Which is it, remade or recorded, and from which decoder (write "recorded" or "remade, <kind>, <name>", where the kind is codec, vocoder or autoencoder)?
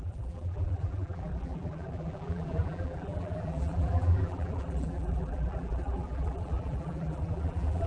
remade, vocoder, BigVGAN v2